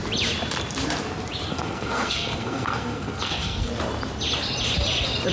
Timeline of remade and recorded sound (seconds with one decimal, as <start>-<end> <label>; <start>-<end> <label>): 0.0-1.5 recorded; 1.5-3.7 remade; 3.7-5.3 recorded